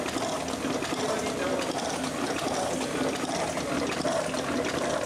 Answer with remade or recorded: recorded